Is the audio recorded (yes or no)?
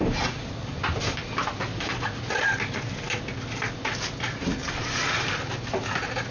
yes